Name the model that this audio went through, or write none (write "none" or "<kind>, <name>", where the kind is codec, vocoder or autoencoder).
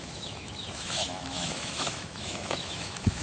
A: autoencoder, DAC-VAE